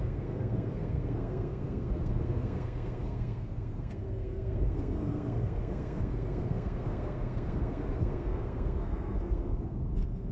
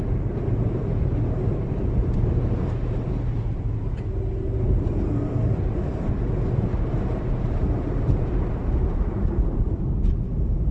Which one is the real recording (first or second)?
second